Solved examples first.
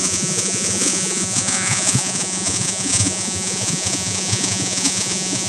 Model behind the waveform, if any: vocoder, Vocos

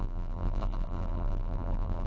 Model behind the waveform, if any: vocoder, BigVGAN v2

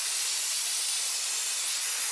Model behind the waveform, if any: none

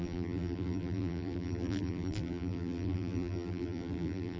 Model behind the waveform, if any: vocoder, BigVGAN v2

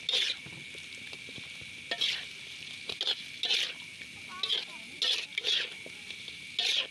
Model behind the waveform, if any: none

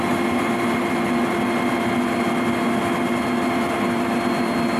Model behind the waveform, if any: none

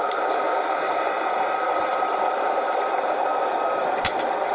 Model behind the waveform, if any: none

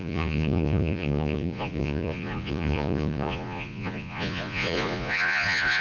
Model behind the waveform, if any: vocoder, Vocos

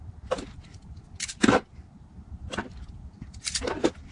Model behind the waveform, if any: none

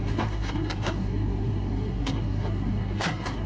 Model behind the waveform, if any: codec, SNAC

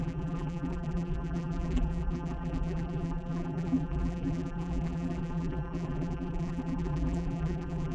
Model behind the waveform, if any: vocoder, BigVGAN v2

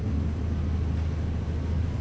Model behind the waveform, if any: none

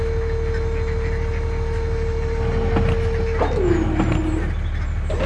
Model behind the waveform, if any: none